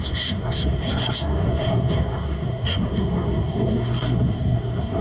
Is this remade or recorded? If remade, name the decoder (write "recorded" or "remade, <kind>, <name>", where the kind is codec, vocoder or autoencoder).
remade, codec, SNAC